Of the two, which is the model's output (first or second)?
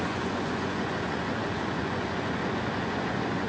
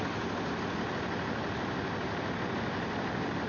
first